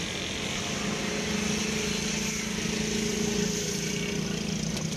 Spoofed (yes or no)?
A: no